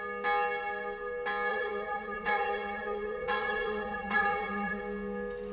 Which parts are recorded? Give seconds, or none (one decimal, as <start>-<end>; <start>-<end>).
0.0-1.5; 4.8-5.5